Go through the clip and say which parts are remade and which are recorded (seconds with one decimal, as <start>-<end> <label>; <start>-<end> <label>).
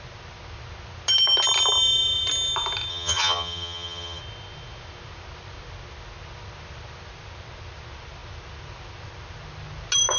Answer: 0.0-2.9 recorded; 2.9-4.2 remade; 4.2-10.2 recorded